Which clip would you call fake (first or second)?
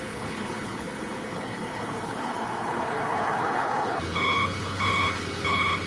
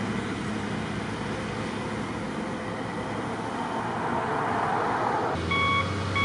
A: first